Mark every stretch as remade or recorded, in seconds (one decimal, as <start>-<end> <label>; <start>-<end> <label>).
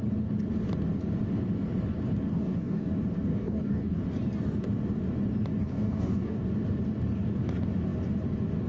0.0-2.3 recorded; 2.3-2.9 remade; 2.9-3.3 recorded; 3.3-4.0 remade; 4.0-5.6 recorded; 5.6-6.4 remade; 6.4-8.7 recorded